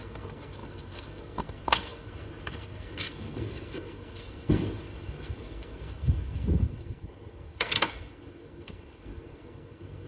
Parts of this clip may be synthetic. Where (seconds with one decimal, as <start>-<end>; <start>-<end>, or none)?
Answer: 0.0-10.1